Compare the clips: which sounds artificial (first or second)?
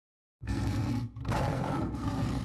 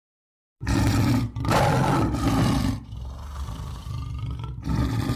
first